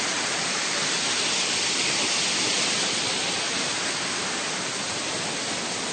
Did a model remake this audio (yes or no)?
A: no